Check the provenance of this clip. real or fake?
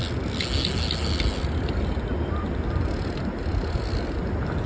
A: real